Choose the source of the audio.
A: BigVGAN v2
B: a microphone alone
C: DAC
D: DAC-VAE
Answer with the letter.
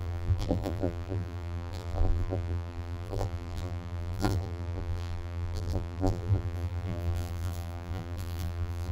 A